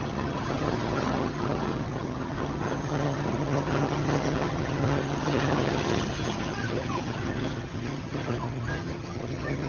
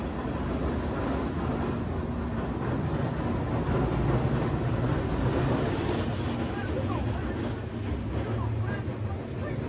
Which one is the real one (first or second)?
second